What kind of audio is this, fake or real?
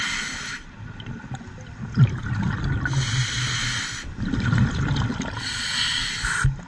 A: real